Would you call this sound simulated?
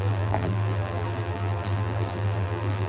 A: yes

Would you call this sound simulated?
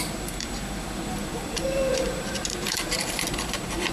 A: yes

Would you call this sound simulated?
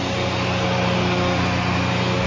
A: no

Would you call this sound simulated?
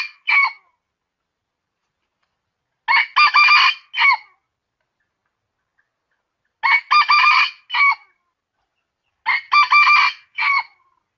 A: no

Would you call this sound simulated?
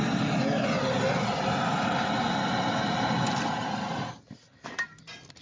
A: no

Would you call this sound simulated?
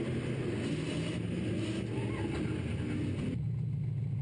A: no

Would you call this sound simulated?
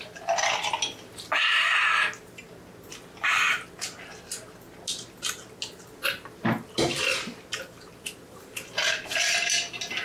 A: no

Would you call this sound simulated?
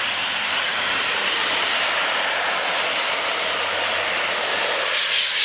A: yes